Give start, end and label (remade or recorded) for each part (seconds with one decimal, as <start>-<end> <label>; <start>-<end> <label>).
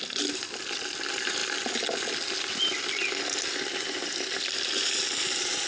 0.0-5.7 recorded